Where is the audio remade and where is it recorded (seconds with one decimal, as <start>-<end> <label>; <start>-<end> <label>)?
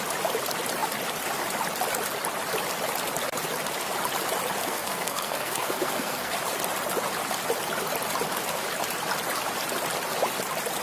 0.0-4.6 recorded; 4.6-6.3 remade; 6.3-10.8 recorded